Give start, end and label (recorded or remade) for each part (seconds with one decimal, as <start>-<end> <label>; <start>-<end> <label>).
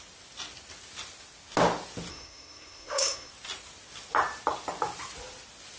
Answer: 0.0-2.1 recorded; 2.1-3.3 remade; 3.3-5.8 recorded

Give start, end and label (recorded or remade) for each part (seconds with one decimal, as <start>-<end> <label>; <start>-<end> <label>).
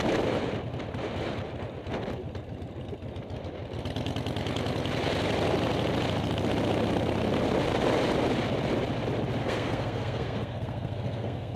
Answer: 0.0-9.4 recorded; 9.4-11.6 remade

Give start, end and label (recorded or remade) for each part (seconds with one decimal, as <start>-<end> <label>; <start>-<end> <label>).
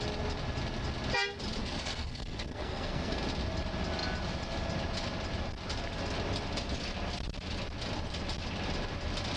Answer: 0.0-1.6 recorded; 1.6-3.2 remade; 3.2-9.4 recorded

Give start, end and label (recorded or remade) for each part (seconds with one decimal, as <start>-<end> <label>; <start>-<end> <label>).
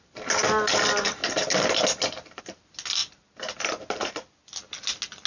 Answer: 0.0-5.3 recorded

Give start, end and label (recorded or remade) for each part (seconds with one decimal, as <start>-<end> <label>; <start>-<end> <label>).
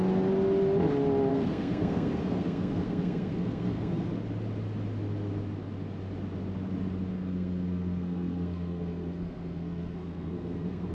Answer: 0.0-1.3 recorded; 1.3-4.1 remade; 4.1-7.1 recorded; 7.1-10.9 remade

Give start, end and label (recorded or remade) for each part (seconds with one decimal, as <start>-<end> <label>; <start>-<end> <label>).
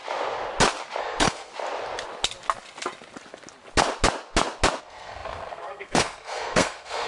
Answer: 0.0-1.0 recorded; 1.0-1.5 remade; 1.5-4.8 recorded; 4.8-7.1 remade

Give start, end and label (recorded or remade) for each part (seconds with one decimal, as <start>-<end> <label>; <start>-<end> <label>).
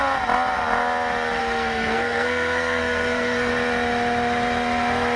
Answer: 0.0-1.4 recorded; 1.4-3.5 remade; 3.5-5.2 recorded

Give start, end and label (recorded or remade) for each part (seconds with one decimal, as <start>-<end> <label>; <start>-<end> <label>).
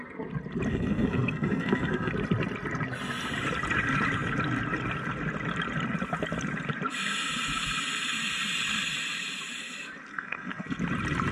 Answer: 0.0-0.7 recorded; 0.7-2.1 remade; 2.1-10.1 recorded; 10.1-10.8 remade; 10.8-11.3 recorded